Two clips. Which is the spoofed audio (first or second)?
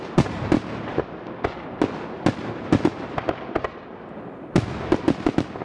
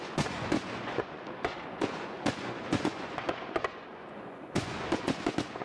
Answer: second